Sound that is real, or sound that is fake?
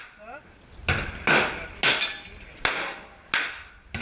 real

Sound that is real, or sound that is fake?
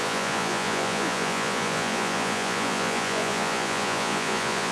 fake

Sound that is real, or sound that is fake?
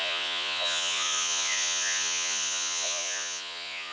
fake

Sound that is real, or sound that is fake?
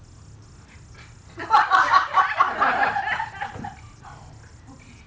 real